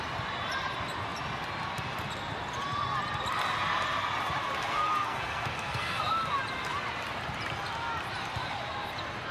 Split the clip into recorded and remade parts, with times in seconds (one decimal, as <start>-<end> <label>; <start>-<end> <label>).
0.0-4.7 recorded; 4.7-6.0 remade; 6.0-9.3 recorded